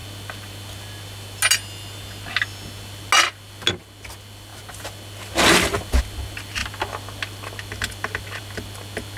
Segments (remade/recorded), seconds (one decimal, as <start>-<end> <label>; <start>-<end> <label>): 0.0-9.2 recorded